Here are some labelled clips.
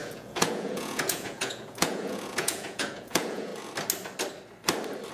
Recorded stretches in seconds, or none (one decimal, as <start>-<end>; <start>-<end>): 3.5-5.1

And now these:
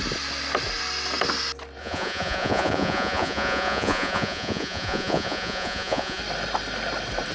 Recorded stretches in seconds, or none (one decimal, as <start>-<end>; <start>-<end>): 0.0-1.8; 6.2-7.3

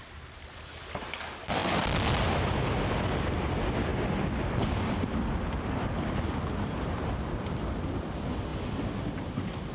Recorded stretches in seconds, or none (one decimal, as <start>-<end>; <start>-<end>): 0.0-9.7

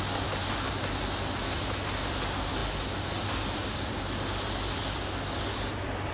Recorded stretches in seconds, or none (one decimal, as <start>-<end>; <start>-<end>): 0.0-6.1

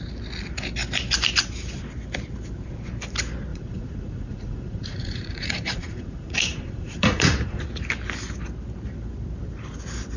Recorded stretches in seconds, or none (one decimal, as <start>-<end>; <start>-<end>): 0.0-3.5; 7.6-10.2